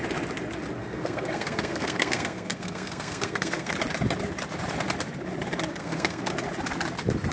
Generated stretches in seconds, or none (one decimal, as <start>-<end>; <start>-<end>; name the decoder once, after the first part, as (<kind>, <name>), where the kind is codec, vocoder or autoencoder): 0.8-3.7 (codec, SNAC); 5.8-6.3